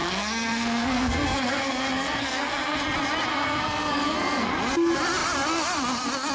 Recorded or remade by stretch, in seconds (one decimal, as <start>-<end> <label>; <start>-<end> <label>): 0.0-2.8 remade; 2.8-3.3 recorded; 3.3-4.5 remade; 4.5-6.3 recorded